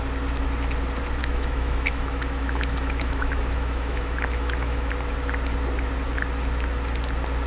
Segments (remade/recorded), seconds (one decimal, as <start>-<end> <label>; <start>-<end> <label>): 0.0-1.2 recorded; 1.2-4.9 remade; 4.9-7.5 recorded